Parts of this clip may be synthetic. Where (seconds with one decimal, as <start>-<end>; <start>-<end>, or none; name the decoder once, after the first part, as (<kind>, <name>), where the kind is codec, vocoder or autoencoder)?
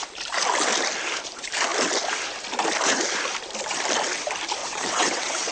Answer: 4.6-5.5 (vocoder, WaveNeXt)